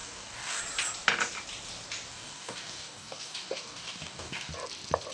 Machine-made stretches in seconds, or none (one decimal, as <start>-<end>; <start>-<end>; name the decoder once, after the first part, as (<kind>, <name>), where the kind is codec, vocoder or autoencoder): 0.0-0.6 (codec, DAC); 2.1-4.5